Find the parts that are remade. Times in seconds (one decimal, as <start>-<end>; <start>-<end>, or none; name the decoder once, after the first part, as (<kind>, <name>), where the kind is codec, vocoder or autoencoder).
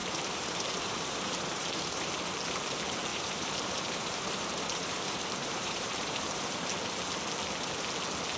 0.0-2.1 (vocoder, BigVGAN v2); 3.1-6.7